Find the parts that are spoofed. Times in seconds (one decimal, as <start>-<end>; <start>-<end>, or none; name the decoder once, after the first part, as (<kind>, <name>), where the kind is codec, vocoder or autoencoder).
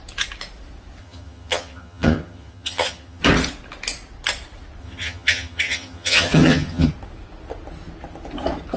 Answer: 1.0-3.2 (vocoder, HiFi-GAN); 4.8-6.9